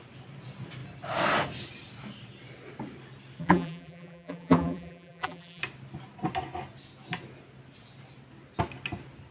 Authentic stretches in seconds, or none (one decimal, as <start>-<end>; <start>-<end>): 0.0-3.4; 5.6-9.3